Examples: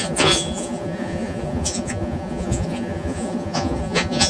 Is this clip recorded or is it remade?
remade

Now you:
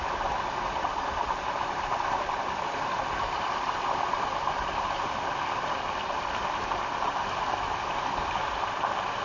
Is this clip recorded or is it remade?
recorded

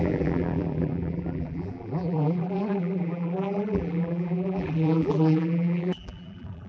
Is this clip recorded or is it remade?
remade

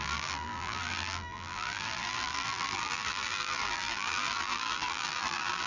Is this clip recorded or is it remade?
remade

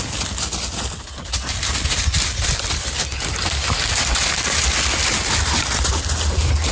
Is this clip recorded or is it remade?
recorded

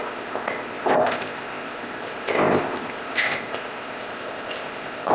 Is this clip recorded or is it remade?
remade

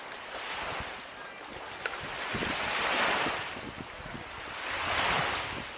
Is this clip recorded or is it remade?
recorded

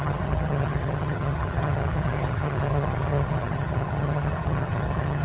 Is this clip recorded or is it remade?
remade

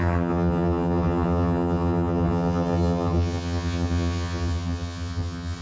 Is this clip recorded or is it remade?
remade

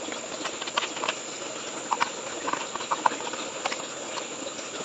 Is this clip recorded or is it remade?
recorded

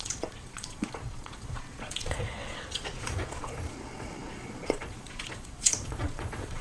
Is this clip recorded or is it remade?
remade